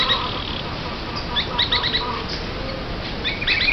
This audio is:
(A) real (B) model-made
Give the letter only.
A